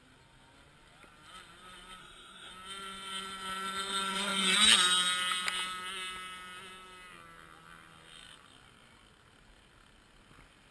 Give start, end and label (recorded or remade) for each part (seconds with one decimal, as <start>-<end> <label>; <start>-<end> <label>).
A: 0.0-2.0 recorded; 2.0-2.5 remade; 2.5-10.7 recorded